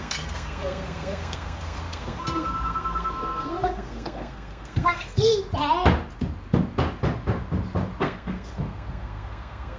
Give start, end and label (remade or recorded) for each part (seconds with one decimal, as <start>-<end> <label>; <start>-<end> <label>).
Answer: 0.0-5.3 remade; 5.3-8.0 recorded; 8.0-9.8 remade